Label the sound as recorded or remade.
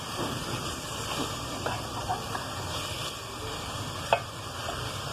recorded